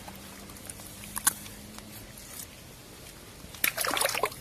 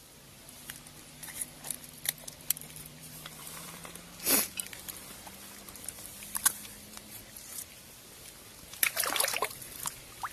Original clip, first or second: first